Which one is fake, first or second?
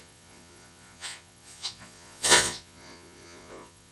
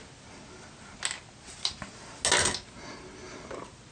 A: first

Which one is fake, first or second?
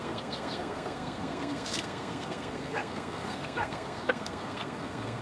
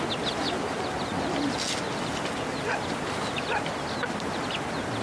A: first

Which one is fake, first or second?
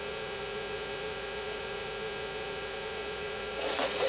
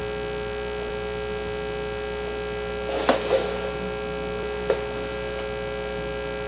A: first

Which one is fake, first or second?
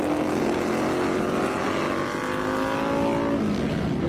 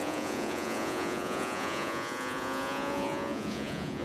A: second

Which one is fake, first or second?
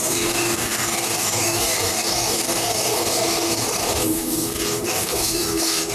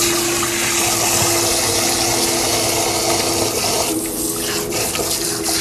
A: first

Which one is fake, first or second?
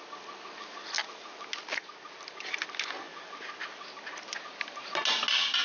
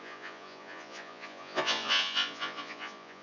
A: second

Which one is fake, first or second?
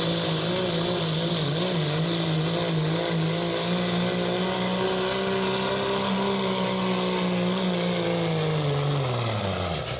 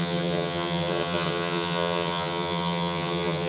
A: second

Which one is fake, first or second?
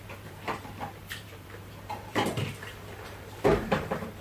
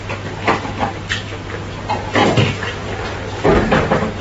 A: first